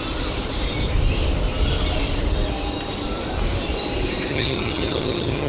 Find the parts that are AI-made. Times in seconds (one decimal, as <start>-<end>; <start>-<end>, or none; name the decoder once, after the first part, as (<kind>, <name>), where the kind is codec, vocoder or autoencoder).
4.3-5.5 (vocoder, HiFi-GAN)